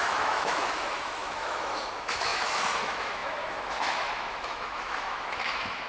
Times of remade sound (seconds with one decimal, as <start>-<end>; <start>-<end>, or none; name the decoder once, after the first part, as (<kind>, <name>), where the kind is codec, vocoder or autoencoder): 0.0-5.9 (autoencoder, DAC-VAE)